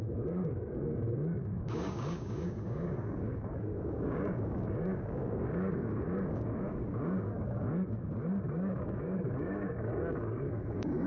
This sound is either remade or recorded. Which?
remade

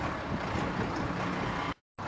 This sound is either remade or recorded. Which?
recorded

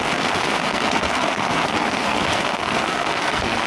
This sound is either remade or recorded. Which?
remade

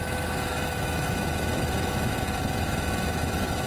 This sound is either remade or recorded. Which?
remade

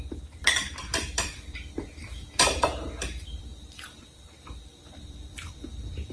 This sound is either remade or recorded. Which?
remade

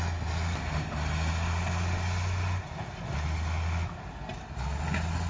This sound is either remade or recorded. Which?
recorded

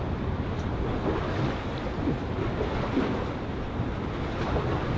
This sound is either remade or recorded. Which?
recorded